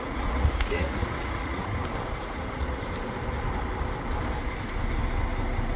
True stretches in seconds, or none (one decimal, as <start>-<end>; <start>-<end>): 1.7-2.2; 2.8-5.8

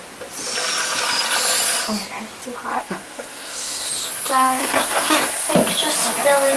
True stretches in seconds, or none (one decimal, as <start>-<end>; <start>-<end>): 0.0-2.7; 3.9-4.3; 5.5-6.6